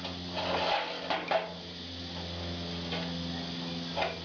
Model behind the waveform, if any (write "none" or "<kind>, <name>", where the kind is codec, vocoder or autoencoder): none